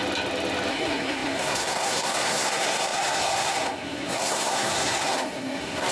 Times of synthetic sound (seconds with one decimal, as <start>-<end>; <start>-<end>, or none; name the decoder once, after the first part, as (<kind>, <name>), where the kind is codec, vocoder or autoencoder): 0.7-5.9 (codec, SNAC)